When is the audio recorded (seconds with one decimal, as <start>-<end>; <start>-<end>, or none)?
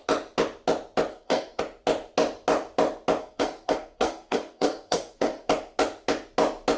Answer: 0.0-1.1; 1.6-3.2; 5.5-6.8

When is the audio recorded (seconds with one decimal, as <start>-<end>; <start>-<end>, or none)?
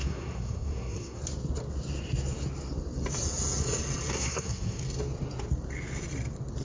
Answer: 1.2-4.1; 4.8-6.6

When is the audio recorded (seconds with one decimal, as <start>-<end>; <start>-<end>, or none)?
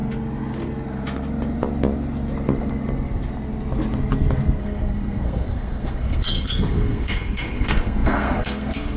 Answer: 0.0-4.6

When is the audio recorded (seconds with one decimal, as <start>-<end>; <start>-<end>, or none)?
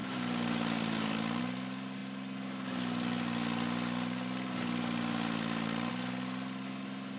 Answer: 0.0-7.2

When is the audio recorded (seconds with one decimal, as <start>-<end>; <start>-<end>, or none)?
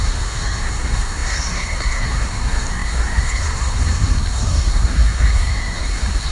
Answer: none